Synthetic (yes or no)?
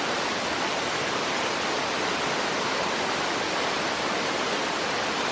no